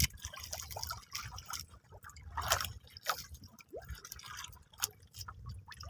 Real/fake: real